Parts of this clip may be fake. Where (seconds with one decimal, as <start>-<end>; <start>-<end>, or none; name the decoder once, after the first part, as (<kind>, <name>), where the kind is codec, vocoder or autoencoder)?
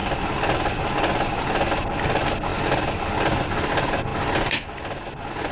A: none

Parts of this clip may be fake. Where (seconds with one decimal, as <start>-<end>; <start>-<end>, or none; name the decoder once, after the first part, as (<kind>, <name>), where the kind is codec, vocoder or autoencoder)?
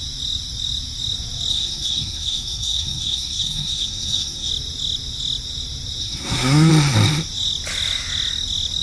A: 1.5-4.5 (codec, SNAC); 6.0-6.7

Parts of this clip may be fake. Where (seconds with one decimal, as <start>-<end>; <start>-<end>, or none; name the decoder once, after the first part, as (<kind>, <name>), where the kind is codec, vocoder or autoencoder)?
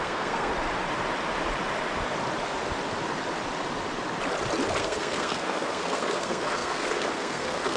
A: 0.0-0.5 (codec, SNAC); 4.8-7.8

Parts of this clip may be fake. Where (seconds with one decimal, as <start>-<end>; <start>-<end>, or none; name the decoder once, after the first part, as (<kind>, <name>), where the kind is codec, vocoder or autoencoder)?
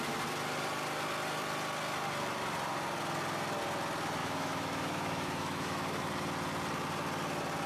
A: 4.2-6.0 (autoencoder, DAC-VAE)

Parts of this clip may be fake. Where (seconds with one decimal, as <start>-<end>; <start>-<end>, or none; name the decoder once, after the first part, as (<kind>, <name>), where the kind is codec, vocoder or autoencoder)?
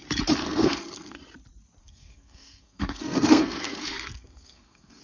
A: 0.4-1.2 (codec, SNAC); 1.8-5.0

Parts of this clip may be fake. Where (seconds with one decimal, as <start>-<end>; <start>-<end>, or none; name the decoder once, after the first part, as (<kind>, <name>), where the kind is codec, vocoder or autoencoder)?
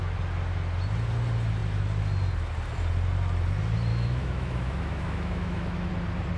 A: 3.9-5.9 (autoencoder, DAC-VAE)